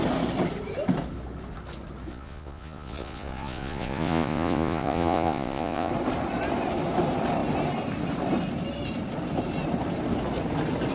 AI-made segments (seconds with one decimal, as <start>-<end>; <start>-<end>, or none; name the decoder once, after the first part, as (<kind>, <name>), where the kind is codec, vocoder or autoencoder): 2.1-5.9 (vocoder, Vocos)